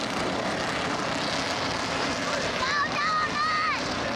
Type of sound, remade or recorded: remade